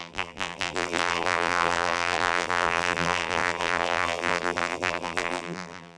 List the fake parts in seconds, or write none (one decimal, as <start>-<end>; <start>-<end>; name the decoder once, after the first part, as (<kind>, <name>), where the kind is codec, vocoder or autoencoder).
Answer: 0.0-6.0 (vocoder, BigVGAN v2)